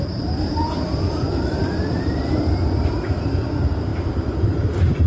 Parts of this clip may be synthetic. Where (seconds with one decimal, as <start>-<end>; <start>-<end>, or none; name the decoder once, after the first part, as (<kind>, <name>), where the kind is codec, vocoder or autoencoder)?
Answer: 0.0-5.1 (vocoder, BigVGAN v2)